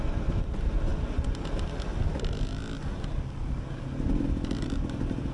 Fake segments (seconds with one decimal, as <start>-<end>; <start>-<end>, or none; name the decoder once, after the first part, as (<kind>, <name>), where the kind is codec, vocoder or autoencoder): none